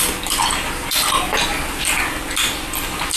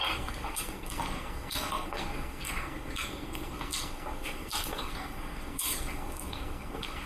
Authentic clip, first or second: first